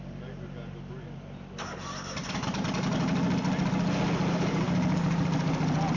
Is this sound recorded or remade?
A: recorded